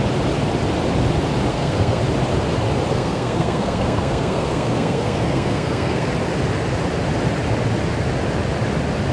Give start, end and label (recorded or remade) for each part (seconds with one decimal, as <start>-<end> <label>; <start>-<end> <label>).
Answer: 0.0-1.5 recorded; 1.5-2.0 remade; 2.0-2.9 recorded; 2.9-6.1 remade; 6.1-9.1 recorded